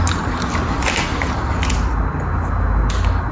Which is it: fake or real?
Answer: real